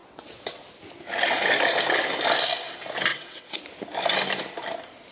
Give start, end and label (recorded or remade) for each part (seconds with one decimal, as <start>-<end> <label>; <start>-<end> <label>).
0.0-0.6 remade; 0.6-3.1 recorded; 3.1-3.6 remade; 3.6-5.1 recorded